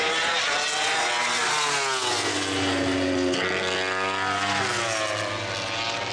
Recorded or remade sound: recorded